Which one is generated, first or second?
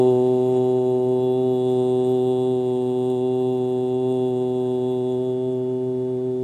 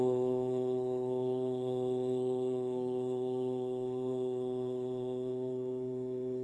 second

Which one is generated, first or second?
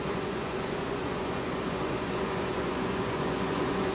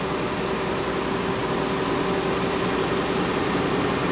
first